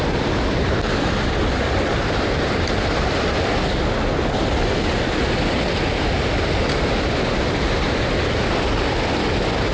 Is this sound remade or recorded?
recorded